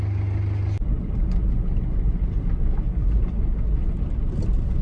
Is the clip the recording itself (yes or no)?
yes